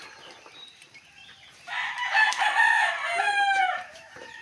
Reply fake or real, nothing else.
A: fake